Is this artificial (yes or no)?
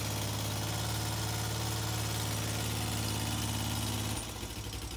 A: no